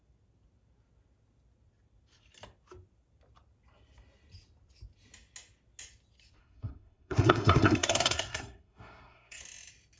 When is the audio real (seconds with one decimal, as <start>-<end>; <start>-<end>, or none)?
0.0-6.4; 9.4-10.0